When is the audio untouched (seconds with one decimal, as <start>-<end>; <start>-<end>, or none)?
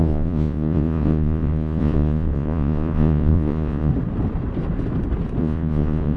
3.9-5.4